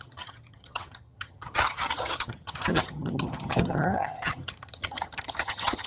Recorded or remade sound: remade